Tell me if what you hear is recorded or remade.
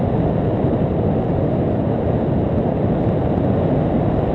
recorded